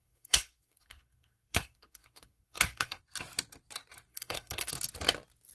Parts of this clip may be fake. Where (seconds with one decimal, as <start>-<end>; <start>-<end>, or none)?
0.0-3.0; 4.1-4.7